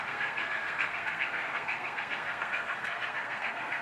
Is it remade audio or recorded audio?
remade